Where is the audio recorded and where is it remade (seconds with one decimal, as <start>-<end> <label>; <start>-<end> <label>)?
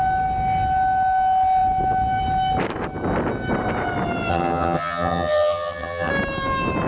0.0-4.3 recorded; 4.3-6.1 remade; 6.1-6.9 recorded